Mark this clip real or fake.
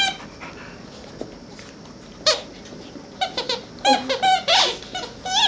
real